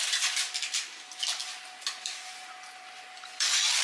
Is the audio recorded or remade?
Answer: recorded